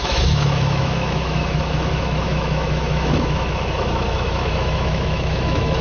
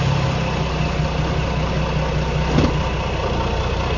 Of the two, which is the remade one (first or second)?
first